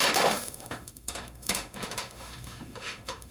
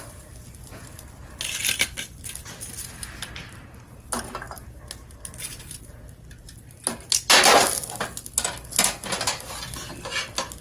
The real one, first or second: second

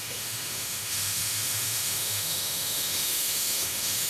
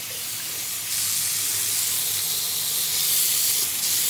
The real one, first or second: second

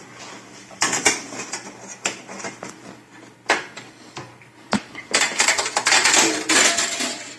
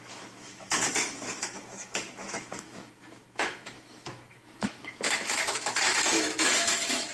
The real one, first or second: first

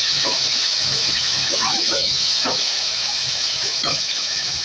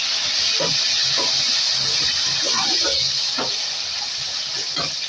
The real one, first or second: second